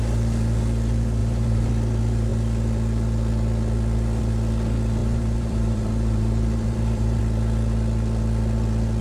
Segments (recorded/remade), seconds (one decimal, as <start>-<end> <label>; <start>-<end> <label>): 0.0-1.2 recorded; 1.2-1.7 remade; 1.7-5.0 recorded; 5.0-7.2 remade; 7.2-9.0 recorded